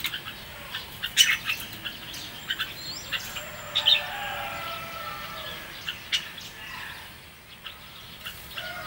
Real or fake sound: real